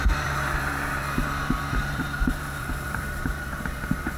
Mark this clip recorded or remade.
remade